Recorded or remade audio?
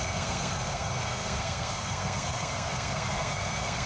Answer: remade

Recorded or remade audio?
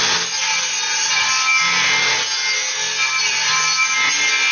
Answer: recorded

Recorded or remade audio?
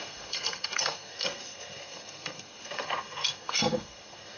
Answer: remade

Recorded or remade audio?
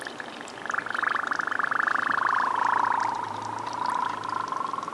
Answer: recorded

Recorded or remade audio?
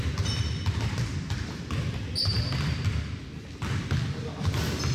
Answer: recorded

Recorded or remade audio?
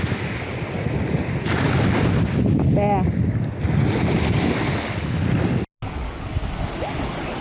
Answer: recorded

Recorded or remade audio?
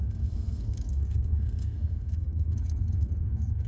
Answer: remade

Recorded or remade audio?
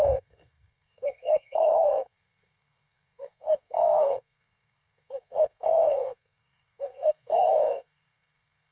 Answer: remade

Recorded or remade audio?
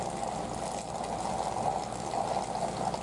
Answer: recorded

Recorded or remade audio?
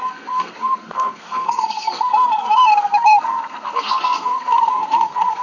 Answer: remade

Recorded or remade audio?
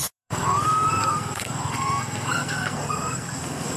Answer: remade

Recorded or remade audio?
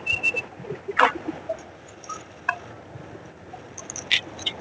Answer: recorded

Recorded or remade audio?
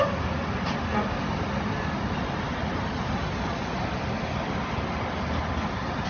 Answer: recorded